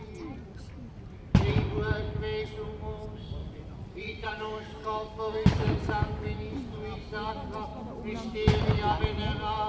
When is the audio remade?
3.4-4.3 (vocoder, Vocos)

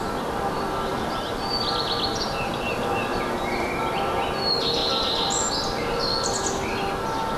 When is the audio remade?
0.9-3.8 (vocoder, BigVGAN v2); 4.8-5.5

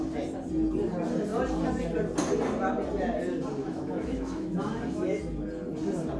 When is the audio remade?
3.6-5.2 (autoencoder, DAC-VAE)

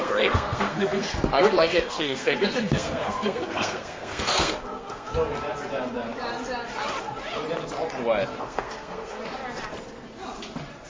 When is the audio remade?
0.0-5.1 (codec, SNAC); 8.4-9.2

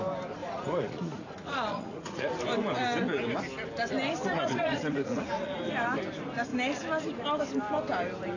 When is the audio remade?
0.4-2.3 (vocoder, Vocos); 4.3-5.6